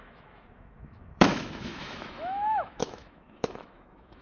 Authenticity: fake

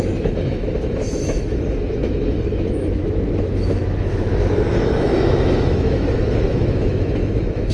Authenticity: fake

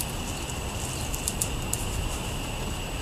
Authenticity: real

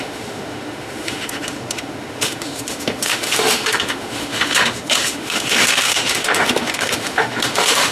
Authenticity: fake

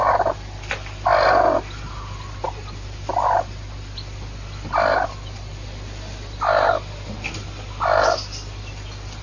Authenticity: real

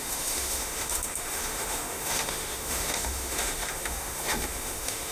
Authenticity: fake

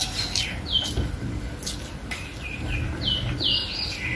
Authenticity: real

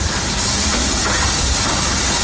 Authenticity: real